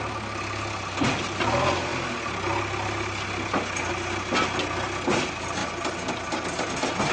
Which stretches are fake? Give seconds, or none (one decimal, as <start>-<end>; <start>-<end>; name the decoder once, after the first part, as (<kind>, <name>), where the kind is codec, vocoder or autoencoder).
none